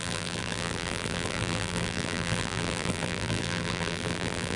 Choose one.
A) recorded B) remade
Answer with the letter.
B